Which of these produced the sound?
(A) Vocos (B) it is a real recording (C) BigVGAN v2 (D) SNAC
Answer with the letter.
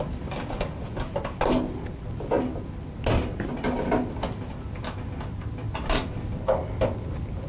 B